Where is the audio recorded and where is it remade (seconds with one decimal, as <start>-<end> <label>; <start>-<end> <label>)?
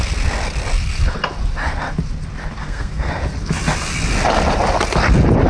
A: 0.0-2.6 recorded; 2.6-3.1 remade; 3.1-5.5 recorded